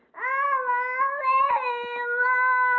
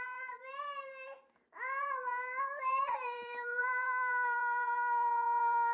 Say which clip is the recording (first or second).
first